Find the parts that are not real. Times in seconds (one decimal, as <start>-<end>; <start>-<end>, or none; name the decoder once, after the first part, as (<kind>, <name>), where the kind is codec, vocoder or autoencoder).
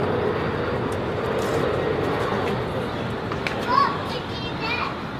none